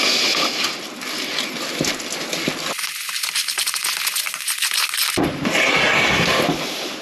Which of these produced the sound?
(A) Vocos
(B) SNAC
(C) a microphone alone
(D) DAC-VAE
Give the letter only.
C